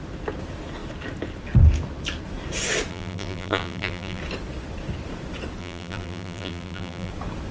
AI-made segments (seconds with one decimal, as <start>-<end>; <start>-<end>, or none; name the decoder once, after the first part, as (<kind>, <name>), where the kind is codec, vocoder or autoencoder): 2.9-4.2 (vocoder, BigVGAN v2); 5.6-7.1